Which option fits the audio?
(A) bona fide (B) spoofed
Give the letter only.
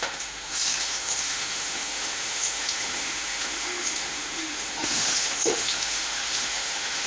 B